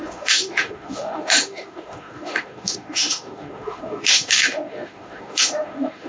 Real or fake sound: fake